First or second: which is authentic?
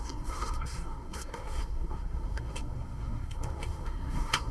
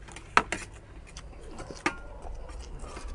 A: second